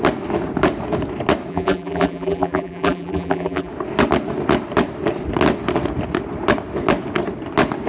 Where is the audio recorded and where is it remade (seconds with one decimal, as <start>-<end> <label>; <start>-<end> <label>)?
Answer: 0.0-1.5 recorded; 1.5-3.7 remade; 3.7-7.9 recorded